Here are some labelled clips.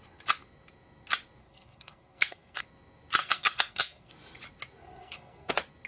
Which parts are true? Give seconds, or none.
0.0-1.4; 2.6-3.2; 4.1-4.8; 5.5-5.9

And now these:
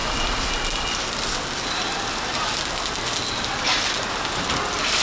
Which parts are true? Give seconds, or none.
0.0-5.0

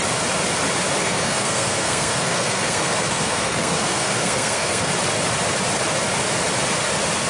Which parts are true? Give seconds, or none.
0.0-1.0; 4.9-7.3

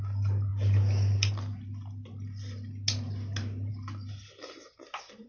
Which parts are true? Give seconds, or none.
0.0-5.3

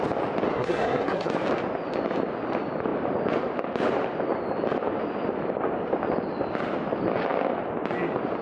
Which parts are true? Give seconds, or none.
0.0-0.5; 1.3-8.4

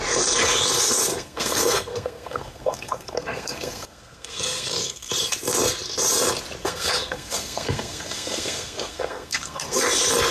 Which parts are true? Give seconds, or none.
0.0-1.1; 5.1-6.6; 9.8-10.3

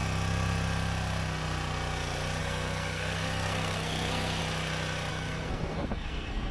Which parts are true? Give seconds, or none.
0.0-2.4; 4.4-5.1